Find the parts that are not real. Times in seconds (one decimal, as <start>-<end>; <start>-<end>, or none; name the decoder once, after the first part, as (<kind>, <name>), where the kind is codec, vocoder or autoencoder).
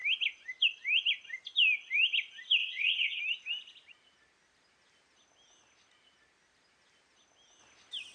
2.6-3.2 (vocoder, WaveNeXt)